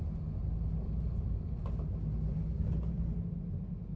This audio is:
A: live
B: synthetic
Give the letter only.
A